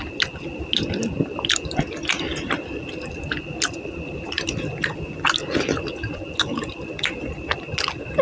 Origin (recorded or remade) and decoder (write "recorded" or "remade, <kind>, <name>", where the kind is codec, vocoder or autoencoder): recorded